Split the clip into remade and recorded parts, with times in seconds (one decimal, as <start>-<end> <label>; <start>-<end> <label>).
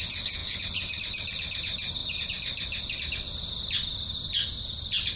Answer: 0.0-5.2 recorded